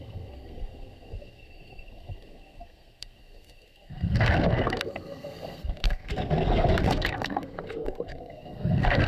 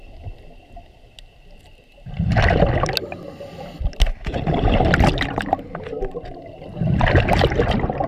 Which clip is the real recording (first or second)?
second